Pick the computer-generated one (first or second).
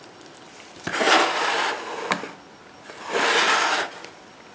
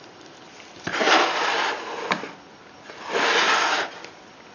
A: second